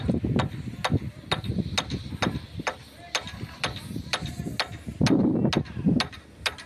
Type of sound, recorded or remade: recorded